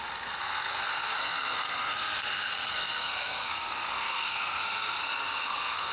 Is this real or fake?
fake